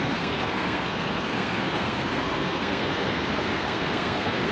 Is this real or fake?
fake